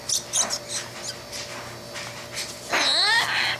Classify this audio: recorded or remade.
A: recorded